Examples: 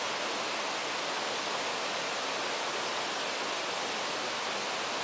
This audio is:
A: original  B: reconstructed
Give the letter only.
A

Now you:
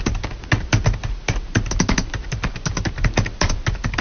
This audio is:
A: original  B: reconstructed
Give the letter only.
A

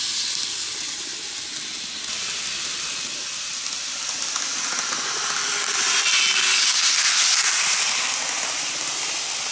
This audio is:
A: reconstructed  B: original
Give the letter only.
B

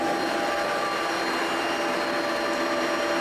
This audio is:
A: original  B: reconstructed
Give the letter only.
A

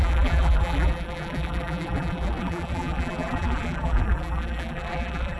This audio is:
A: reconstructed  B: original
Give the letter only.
A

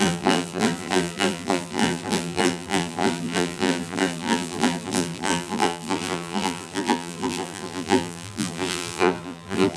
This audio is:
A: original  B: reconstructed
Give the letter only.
B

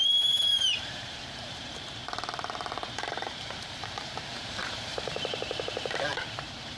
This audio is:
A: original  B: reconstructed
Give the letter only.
B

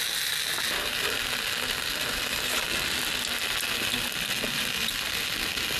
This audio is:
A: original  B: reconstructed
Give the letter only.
A